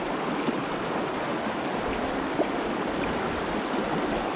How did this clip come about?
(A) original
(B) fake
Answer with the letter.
A